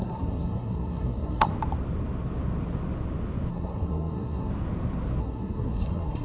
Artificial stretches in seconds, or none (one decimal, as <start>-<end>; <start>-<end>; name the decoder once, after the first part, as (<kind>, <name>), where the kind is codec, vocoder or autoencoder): 0.0-1.5 (codec, SNAC); 3.5-4.5; 5.2-6.2